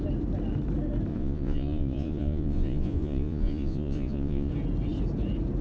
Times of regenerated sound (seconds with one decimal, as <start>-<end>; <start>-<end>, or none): 1.1-4.5